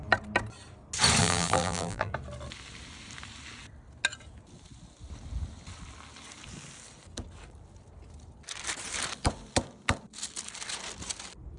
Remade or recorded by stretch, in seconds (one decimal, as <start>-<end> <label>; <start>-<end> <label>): 0.0-1.2 recorded; 1.2-2.1 remade; 2.1-11.6 recorded